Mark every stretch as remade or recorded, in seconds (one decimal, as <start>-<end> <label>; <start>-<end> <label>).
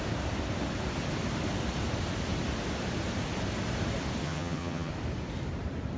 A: 0.0-4.2 recorded; 4.2-4.9 remade; 4.9-6.0 recorded